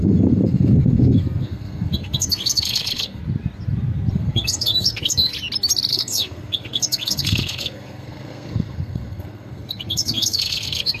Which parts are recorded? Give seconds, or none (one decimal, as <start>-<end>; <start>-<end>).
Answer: 3.2-4.1; 5.3-5.9